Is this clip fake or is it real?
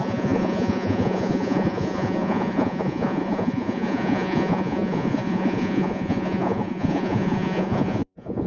fake